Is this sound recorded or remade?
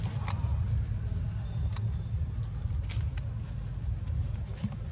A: recorded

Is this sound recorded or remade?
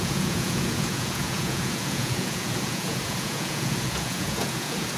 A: remade